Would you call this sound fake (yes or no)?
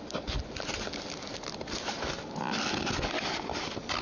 no